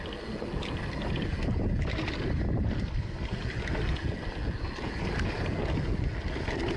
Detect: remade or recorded recorded